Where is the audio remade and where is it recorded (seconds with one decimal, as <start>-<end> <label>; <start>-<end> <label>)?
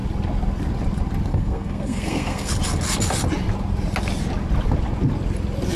0.0-1.3 recorded; 1.3-2.5 remade; 2.5-5.8 recorded